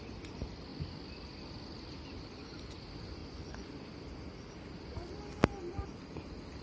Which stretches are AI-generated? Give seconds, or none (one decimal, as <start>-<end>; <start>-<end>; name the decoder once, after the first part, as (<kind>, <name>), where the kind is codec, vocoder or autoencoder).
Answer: 3.2-3.7 (vocoder, Vocos)